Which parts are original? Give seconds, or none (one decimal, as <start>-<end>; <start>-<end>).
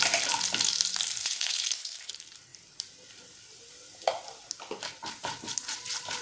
0.0-1.2; 2.1-6.2